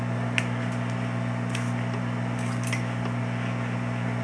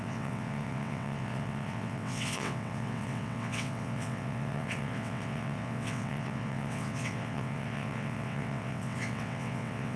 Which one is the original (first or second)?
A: first